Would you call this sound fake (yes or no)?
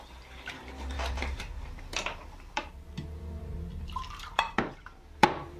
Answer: yes